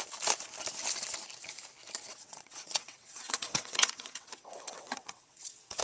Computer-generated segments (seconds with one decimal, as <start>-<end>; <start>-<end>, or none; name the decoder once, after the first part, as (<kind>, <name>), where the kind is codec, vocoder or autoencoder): 2.1-5.8 (vocoder, WaveNeXt)